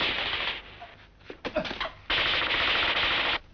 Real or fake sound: real